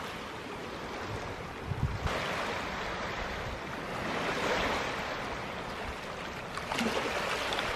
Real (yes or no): yes